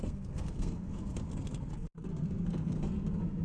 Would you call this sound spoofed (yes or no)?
yes